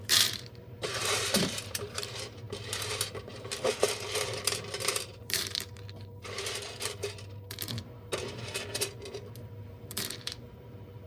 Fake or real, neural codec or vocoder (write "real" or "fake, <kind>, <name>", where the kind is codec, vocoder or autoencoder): fake, vocoder, BigVGAN v2